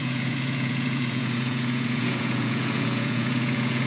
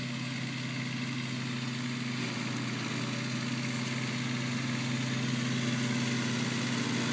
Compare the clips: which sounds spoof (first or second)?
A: first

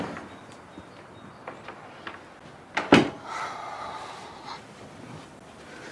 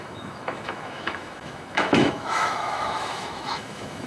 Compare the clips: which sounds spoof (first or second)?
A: second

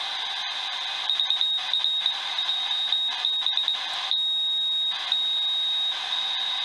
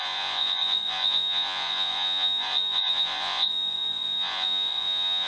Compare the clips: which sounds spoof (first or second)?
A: second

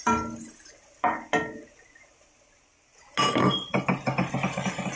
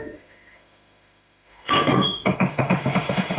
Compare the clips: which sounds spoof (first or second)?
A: second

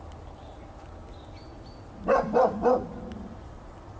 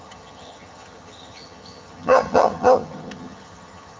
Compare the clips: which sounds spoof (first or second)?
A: second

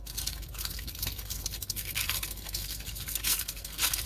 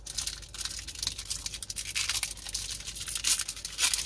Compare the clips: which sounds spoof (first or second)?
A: first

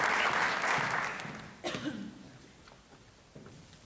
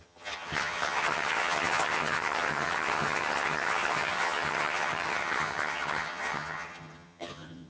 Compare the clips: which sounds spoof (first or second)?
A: second